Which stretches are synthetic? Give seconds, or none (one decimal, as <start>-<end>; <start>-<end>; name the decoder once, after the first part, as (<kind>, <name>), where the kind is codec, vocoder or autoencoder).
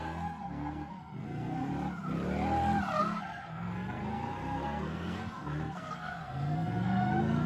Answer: 0.0-1.7 (codec, SNAC); 3.0-7.5